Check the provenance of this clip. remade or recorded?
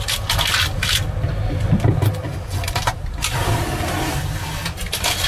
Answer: recorded